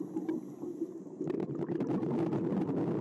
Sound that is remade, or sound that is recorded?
recorded